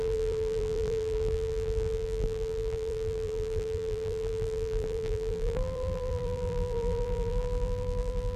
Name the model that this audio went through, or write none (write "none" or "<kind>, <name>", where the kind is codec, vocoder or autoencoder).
vocoder, BigVGAN v2